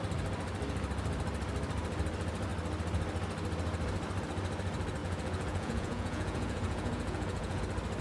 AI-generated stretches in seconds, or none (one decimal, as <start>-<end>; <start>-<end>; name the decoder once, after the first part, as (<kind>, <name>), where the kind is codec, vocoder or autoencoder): 5.0-7.6 (vocoder, Vocos)